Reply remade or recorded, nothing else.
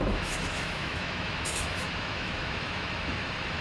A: remade